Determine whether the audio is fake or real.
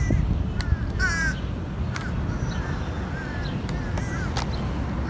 real